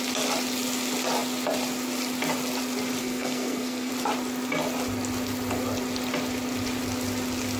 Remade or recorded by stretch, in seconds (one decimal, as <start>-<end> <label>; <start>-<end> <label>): 0.0-3.0 recorded; 3.0-3.9 remade; 3.9-7.6 recorded